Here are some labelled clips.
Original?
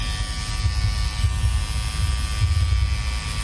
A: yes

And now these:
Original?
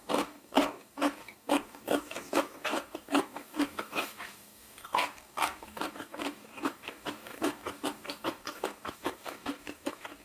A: no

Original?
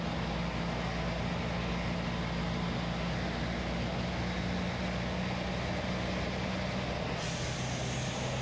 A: yes